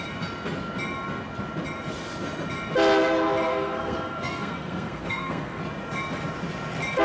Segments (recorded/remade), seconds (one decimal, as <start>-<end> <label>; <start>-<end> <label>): 0.0-3.5 recorded; 3.5-5.6 remade; 5.6-7.0 recorded